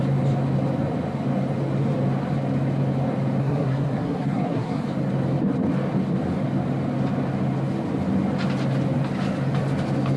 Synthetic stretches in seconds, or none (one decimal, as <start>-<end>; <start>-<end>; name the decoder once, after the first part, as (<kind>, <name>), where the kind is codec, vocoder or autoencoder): 3.4-4.8 (codec, SNAC)